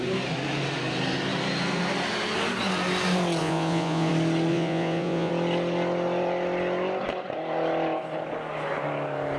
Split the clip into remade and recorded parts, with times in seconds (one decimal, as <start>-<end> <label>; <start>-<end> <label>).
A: 0.0-3.4 recorded; 3.4-4.1 remade; 4.1-4.5 recorded; 4.5-5.3 remade; 5.3-9.4 recorded